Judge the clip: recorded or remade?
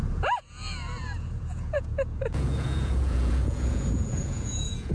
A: remade